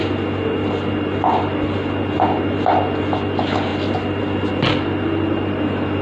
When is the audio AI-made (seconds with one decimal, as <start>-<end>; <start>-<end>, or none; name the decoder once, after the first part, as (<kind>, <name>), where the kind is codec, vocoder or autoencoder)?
none